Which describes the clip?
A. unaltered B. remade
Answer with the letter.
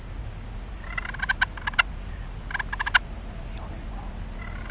A